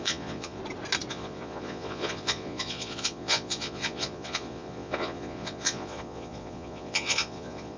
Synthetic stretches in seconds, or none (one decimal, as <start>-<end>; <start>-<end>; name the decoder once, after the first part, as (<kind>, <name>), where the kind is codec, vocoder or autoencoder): 0.0-0.6 (vocoder, Vocos); 1.1-7.8